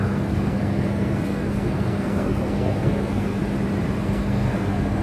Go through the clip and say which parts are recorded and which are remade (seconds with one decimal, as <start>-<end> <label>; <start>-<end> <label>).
0.0-3.4 remade; 3.4-4.0 recorded; 4.0-5.0 remade